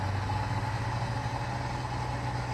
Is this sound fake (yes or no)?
no